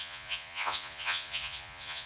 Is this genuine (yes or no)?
no